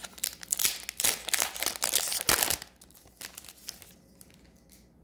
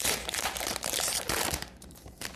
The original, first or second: first